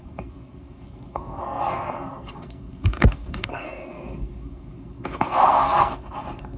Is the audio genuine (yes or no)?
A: no